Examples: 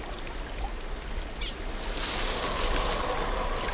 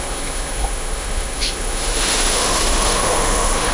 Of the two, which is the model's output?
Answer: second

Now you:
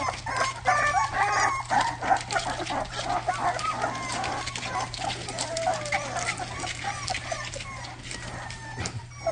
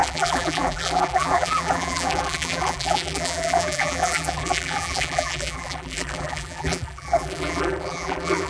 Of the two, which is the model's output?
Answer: second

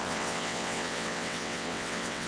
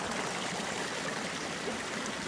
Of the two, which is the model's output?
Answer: first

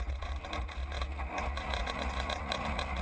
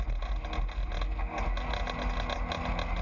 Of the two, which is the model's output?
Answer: first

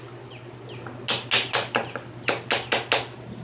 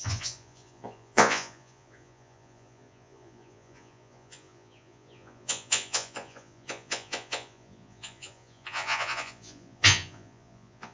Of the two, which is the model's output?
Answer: second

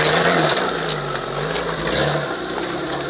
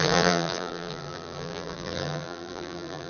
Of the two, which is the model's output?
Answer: second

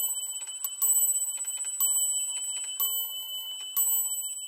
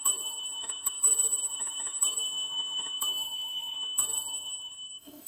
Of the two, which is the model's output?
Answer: second